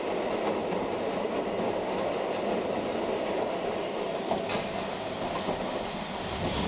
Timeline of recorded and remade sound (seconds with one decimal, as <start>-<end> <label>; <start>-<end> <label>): 0.0-0.6 remade; 0.6-2.8 recorded; 2.8-6.7 remade